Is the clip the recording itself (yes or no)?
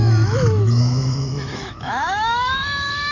no